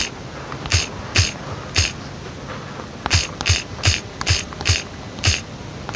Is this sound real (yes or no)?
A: yes